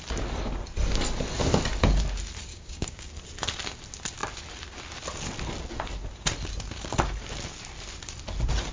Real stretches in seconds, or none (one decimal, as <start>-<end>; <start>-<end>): 0.0-2.5; 3.1-8.7